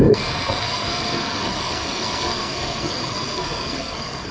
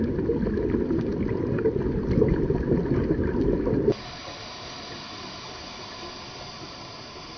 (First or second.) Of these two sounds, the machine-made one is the first